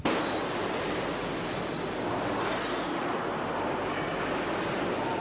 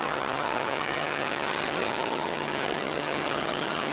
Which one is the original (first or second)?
first